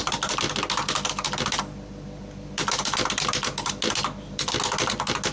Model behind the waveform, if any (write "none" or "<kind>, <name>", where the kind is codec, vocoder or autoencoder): none